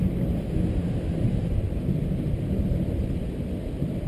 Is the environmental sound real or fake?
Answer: real